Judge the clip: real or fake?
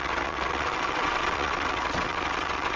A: fake